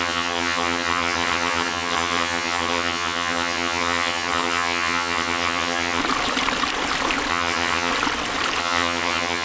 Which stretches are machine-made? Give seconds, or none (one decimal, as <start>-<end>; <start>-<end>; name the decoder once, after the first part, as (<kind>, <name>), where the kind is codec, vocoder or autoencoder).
0.0-6.0 (vocoder, HiFi-GAN); 7.3-7.9; 8.6-9.4